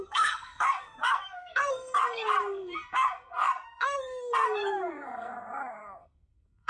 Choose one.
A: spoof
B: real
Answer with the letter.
A